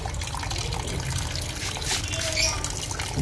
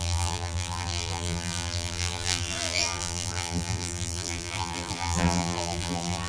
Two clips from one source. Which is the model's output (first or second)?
second